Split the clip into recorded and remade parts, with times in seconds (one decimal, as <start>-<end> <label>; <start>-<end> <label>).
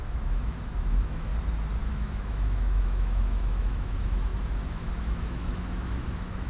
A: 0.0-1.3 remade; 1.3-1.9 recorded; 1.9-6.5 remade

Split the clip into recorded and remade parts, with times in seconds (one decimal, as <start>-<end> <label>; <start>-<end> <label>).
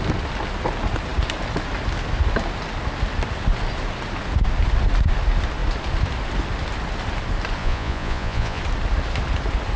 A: 0.0-7.6 recorded; 7.6-8.6 remade; 8.6-9.8 recorded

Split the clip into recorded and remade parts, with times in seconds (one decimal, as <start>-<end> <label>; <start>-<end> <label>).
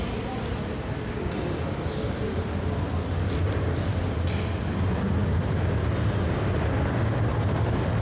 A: 0.0-8.0 recorded